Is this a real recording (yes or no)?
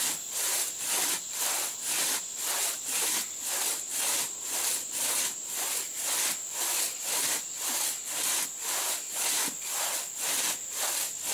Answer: yes